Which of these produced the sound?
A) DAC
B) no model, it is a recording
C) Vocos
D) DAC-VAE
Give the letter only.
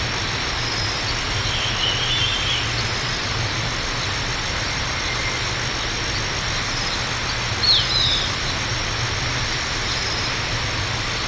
B